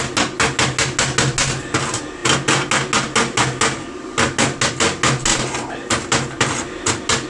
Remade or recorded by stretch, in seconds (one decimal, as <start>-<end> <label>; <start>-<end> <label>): 0.0-7.3 recorded